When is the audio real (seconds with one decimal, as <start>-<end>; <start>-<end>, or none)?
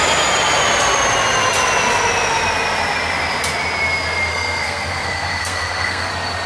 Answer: 0.0-4.3; 6.1-6.5